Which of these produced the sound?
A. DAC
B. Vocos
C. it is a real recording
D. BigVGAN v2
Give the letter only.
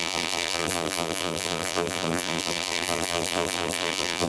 D